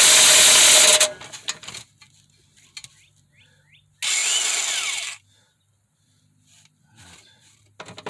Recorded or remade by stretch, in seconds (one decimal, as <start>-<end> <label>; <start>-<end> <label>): 0.0-8.1 recorded